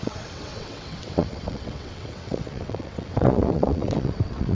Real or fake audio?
fake